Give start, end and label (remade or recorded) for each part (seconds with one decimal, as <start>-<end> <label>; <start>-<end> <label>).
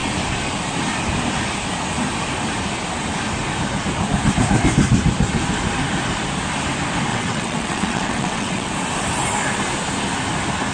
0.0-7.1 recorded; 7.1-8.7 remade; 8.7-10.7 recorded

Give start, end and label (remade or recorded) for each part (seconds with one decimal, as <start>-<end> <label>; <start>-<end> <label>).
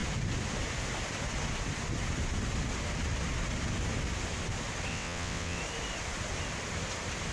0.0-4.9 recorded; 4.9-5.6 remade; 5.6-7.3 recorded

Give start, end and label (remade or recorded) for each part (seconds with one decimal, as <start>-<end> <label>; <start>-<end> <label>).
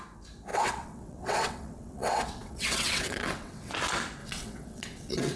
0.0-0.5 recorded; 0.5-3.7 remade; 3.7-4.2 recorded; 4.2-5.4 remade